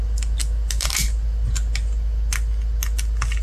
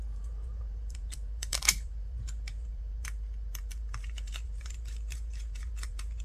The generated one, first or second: second